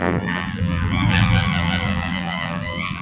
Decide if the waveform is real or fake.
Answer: fake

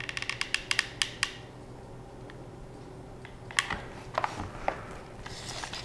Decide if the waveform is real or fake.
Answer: real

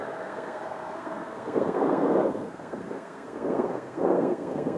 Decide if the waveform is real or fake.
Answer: fake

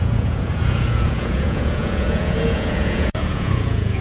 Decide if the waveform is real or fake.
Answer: fake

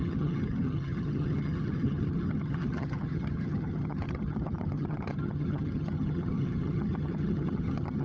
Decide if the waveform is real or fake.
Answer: fake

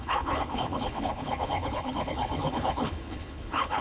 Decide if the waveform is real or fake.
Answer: fake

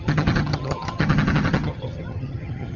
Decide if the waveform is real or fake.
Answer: fake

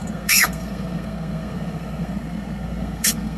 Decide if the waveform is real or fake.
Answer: fake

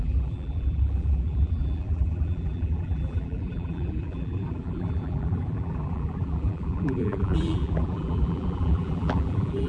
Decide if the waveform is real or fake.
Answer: fake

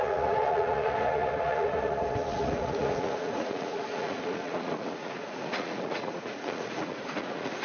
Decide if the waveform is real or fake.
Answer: fake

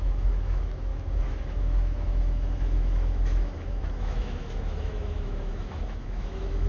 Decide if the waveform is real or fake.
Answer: fake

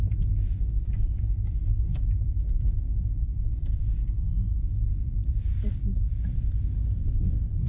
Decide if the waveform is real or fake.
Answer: fake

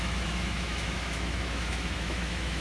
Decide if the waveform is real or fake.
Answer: fake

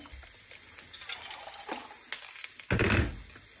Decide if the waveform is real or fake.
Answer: real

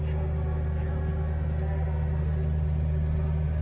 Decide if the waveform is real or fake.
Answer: real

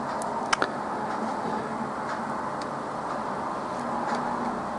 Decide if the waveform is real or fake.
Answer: real